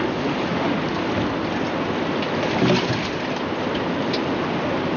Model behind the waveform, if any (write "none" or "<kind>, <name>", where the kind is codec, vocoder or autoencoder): none